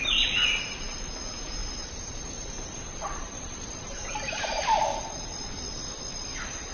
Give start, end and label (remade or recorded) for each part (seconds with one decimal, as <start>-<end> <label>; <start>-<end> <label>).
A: 0.0-1.6 recorded; 1.6-5.0 remade; 5.0-6.7 recorded